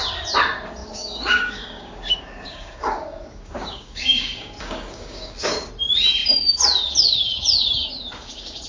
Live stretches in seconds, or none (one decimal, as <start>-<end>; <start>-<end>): 0.0-0.8; 5.7-8.7